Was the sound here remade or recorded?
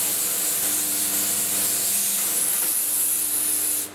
recorded